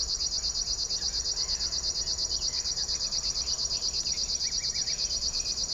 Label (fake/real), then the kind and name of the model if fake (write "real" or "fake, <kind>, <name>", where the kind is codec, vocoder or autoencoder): real